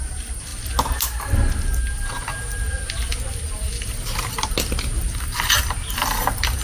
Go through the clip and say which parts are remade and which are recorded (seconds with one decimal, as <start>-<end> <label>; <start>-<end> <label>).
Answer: 0.0-6.6 recorded